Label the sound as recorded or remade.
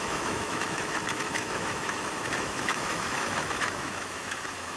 remade